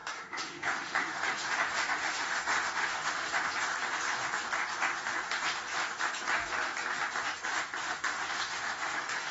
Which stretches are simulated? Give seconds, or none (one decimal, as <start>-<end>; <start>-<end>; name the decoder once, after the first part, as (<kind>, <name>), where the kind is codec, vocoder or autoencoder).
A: 0.0-3.5 (autoencoder, DAC-VAE); 7.8-9.3